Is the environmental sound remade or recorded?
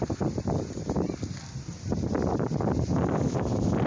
recorded